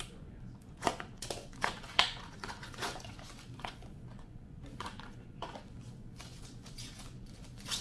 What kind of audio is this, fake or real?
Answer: fake